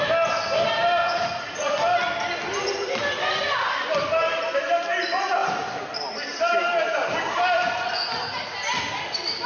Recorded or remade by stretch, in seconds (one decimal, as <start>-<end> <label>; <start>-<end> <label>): 0.0-1.0 recorded; 1.0-1.7 remade; 1.7-9.5 recorded